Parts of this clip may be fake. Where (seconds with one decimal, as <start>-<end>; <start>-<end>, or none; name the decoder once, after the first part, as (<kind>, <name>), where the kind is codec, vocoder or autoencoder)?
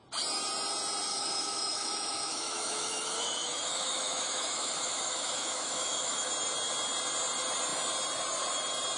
1.1-6.3 (autoencoder, DAC-VAE)